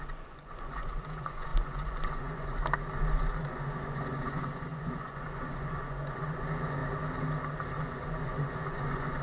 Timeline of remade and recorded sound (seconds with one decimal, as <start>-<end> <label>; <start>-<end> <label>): 0.0-2.6 remade; 2.6-3.4 recorded; 3.4-6.8 remade; 6.8-7.8 recorded; 7.8-9.2 remade